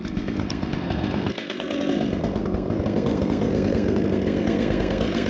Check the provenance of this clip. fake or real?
fake